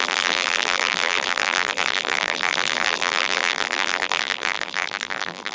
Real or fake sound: fake